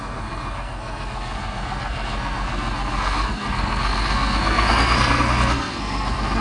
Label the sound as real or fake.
fake